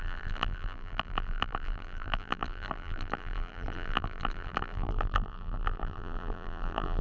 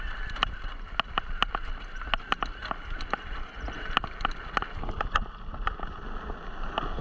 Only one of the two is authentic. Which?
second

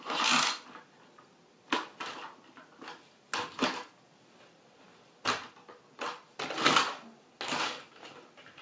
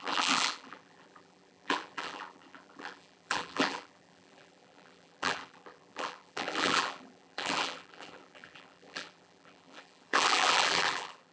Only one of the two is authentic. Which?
first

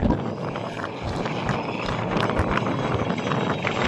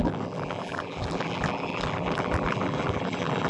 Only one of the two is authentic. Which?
first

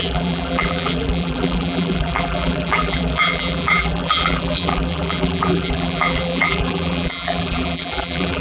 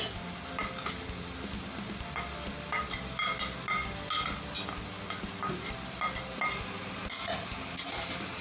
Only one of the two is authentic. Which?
second